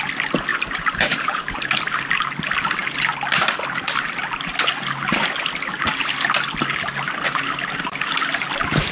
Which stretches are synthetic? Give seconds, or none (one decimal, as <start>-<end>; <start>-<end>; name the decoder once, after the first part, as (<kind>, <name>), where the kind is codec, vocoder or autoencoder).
0.5-1.8 (vocoder, BigVGAN v2)